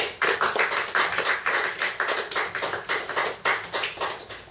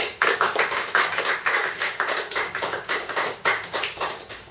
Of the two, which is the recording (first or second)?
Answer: first